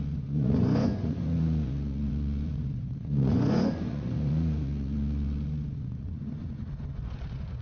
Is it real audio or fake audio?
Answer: fake